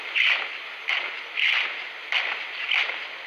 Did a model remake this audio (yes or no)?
no